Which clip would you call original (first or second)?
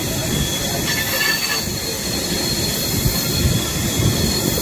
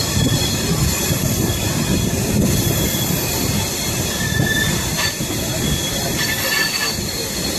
first